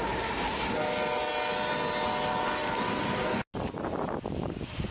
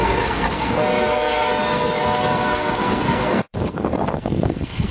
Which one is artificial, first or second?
second